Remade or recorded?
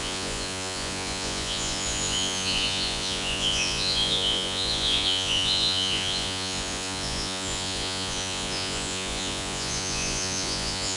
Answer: remade